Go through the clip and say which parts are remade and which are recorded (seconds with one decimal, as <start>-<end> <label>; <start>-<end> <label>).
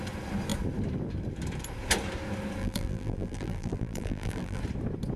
0.0-2.6 recorded; 2.6-4.6 remade; 4.6-5.2 recorded